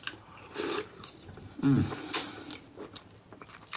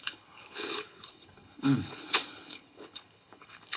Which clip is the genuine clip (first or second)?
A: first